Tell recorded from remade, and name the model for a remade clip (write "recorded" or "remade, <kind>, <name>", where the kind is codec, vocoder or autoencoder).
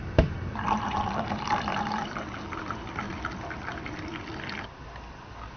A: recorded